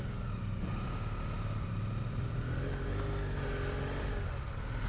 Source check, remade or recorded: recorded